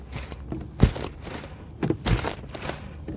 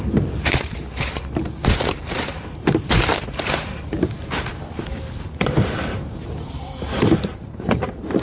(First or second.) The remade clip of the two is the second